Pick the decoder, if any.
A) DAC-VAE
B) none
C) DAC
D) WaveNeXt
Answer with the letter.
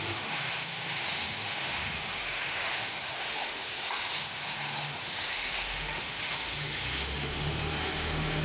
A